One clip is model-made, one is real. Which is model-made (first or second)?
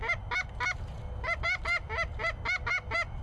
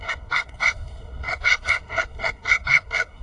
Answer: second